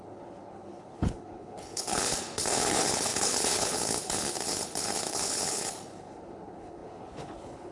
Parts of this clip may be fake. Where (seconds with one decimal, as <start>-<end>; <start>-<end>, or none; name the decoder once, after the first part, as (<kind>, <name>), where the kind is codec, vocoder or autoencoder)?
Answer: 0.0-7.7 (codec, HILCodec)